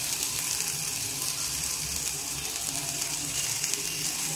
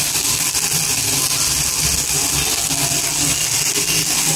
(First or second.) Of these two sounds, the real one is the second